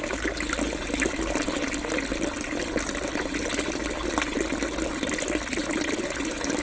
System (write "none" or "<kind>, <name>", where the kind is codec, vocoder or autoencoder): none